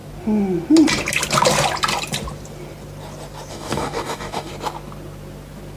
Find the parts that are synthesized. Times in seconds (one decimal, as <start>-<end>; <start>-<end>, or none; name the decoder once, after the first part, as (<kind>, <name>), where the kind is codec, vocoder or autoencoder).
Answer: 3.5-4.5 (codec, DAC)

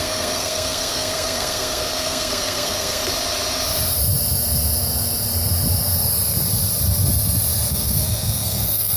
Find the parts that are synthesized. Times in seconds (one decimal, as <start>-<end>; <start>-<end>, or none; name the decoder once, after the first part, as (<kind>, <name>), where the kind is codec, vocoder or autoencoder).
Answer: 0.0-3.0 (codec, SNAC); 7.7-9.0

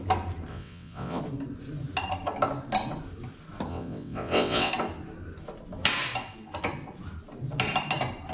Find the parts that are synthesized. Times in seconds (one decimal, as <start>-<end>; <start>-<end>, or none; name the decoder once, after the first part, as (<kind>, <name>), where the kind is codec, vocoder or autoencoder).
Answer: 0.5-1.2 (vocoder, WaveNeXt); 3.7-4.7

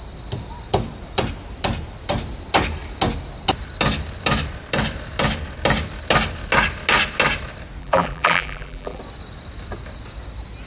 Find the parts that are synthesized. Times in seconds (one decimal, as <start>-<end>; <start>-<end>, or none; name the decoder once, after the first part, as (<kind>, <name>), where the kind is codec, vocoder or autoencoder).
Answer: 7.8-9.0 (vocoder, BigVGAN v2)

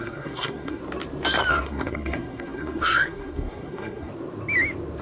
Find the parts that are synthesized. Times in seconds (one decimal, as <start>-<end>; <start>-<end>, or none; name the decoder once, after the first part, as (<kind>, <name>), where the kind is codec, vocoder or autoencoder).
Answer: 0.0-0.8 (codec, SNAC); 1.5-4.1

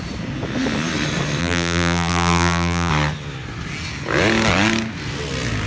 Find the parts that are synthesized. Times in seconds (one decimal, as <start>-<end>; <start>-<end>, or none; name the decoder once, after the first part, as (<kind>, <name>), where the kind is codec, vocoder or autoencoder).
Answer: 1.4-2.9 (vocoder, BigVGAN v2)

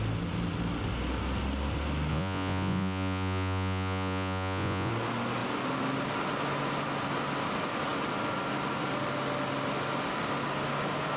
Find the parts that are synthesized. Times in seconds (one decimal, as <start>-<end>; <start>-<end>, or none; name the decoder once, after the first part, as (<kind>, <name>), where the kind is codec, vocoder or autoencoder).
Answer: 2.1-4.9 (vocoder, Vocos)